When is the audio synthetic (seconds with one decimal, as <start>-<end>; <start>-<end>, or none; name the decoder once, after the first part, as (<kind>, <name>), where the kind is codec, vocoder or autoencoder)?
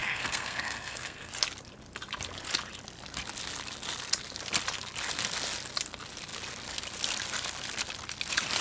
0.0-1.3 (codec, SNAC)